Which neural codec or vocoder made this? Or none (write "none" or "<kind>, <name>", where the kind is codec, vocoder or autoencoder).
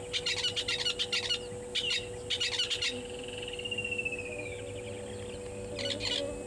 none